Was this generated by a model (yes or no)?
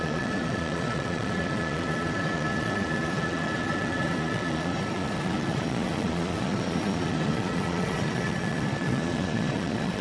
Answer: yes